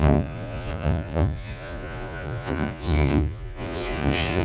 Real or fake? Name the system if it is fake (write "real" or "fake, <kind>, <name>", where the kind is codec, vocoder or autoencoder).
fake, vocoder, Vocos